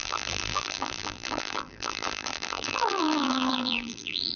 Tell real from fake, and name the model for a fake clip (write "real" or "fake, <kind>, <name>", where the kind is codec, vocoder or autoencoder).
fake, vocoder, BigVGAN v2